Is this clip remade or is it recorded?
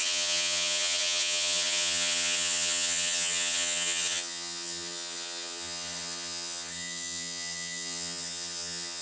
remade